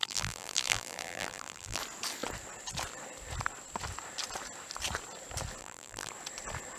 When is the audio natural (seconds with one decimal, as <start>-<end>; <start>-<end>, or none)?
1.8-5.6; 6.1-6.8